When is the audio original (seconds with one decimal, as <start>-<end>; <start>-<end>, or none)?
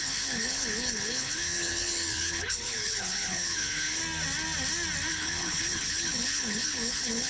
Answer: 4.0-5.1